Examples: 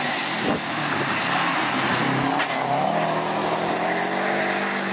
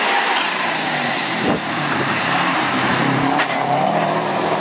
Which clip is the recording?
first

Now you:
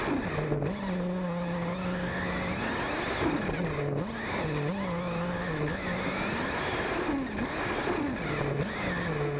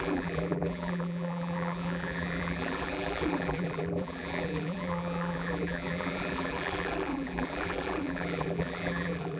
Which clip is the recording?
first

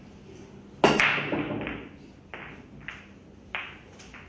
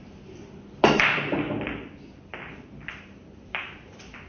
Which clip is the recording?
first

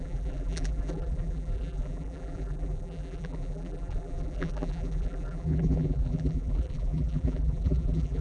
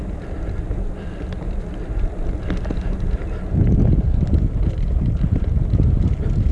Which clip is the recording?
second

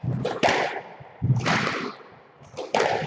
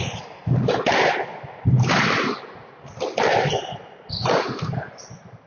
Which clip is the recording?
second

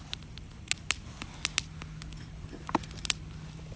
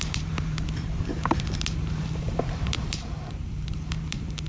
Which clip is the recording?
first